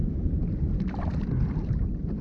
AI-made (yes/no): no